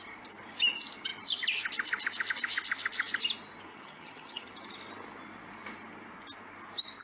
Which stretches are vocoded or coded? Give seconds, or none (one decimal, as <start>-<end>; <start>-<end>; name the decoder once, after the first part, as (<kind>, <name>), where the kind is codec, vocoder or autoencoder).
3.7-4.5 (vocoder, HiFi-GAN)